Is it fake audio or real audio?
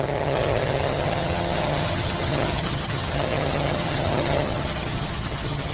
fake